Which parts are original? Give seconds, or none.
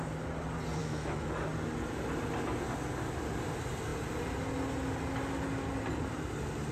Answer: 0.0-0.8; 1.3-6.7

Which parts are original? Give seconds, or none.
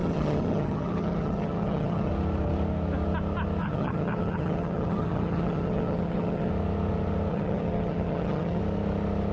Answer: 2.1-3.6; 6.5-7.3; 8.6-9.3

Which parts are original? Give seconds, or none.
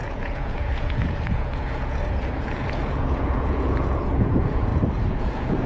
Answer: 4.7-5.2